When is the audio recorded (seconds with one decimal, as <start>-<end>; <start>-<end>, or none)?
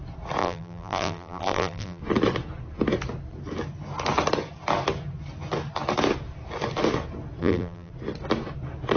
0.0-0.4; 2.0-7.4; 7.9-9.0